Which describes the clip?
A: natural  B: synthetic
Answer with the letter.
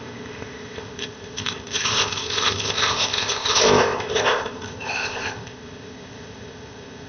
B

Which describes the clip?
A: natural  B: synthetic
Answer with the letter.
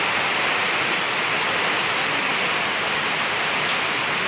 A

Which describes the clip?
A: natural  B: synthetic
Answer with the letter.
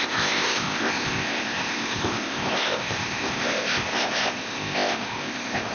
B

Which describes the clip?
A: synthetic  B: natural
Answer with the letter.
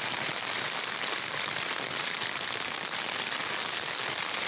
B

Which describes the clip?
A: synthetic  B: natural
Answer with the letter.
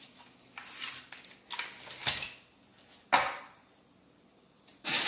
B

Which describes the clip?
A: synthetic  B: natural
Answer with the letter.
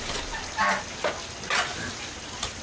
B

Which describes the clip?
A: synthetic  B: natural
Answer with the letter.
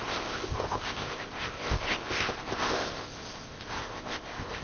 A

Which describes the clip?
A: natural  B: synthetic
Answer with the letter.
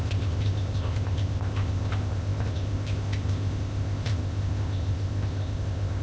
B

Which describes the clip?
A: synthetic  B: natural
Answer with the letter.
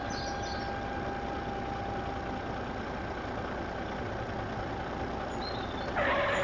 B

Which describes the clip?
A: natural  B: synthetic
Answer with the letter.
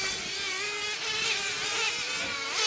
A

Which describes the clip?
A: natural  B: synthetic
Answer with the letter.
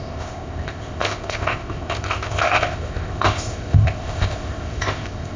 B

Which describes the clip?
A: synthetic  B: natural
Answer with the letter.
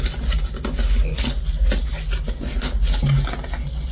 B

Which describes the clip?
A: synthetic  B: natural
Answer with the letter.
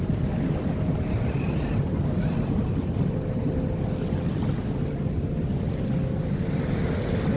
B